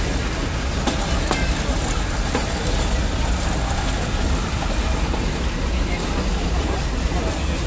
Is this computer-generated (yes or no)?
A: no